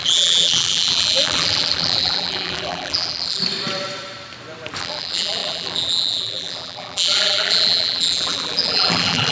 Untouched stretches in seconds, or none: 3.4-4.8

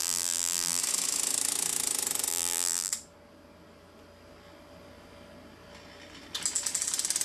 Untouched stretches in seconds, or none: 0.8-2.3; 2.9-7.2

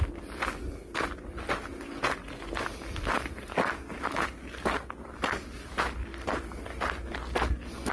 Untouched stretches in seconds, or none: 0.0-7.9

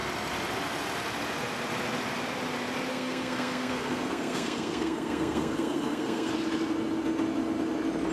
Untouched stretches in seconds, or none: 0.0-2.9; 6.3-8.1

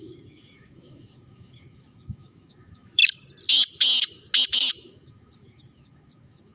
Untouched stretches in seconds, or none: 3.0-4.8